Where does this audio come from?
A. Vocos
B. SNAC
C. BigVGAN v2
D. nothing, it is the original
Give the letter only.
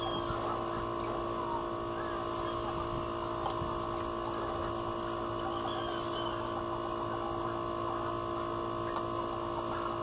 D